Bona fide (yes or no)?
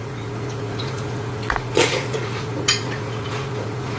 no